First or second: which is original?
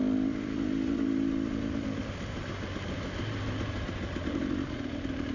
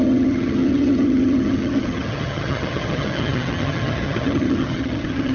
first